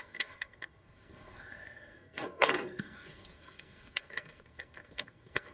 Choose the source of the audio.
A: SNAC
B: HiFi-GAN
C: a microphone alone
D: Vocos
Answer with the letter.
A